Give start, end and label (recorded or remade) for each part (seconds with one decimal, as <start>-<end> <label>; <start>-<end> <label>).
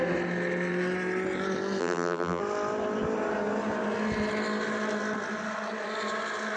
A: 0.0-1.8 recorded; 1.8-2.4 remade; 2.4-6.6 recorded